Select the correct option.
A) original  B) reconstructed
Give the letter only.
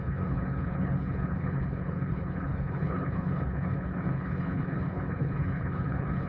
B